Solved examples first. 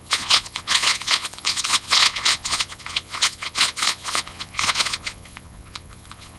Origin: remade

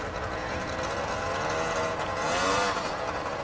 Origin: remade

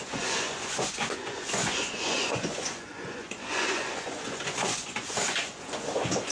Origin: remade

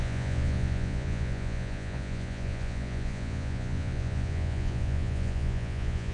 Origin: remade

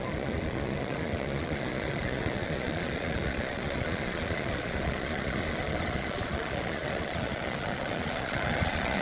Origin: remade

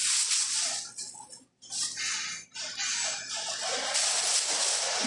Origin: recorded